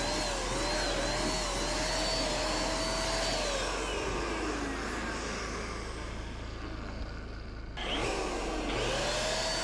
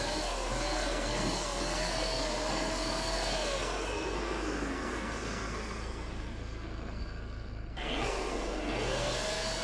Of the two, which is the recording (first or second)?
first